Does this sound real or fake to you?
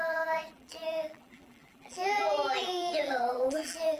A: fake